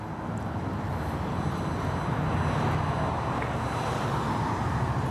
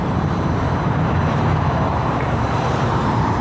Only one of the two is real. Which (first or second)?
first